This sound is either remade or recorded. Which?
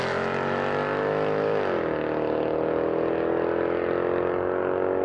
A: recorded